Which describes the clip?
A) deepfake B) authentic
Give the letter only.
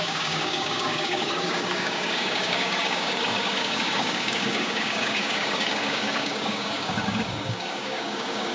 A